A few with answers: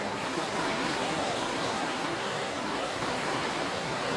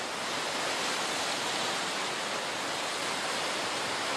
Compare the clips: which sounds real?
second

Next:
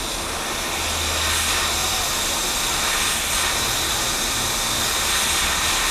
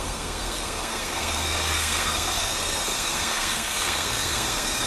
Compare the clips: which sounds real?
first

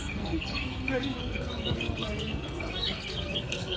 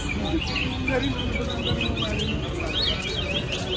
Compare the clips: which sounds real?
second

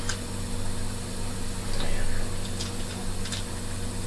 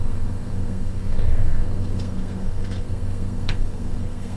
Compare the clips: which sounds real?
first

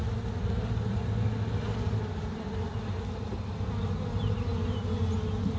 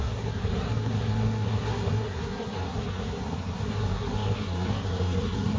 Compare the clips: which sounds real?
first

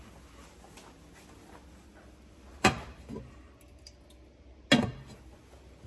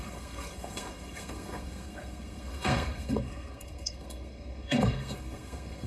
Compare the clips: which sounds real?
first